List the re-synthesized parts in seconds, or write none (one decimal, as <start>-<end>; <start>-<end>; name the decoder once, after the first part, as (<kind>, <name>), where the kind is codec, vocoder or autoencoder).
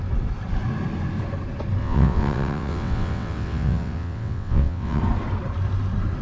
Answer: 1.8-5.0 (vocoder, WaveNeXt)